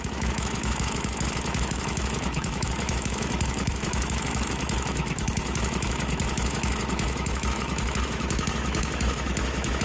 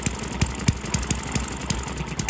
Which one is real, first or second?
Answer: second